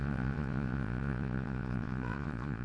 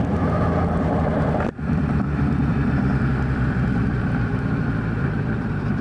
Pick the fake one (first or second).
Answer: first